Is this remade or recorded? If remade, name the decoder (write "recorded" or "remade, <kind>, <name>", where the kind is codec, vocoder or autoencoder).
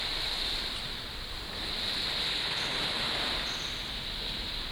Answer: remade, vocoder, BigVGAN v2